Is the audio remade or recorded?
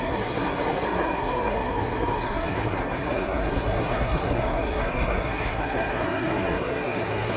remade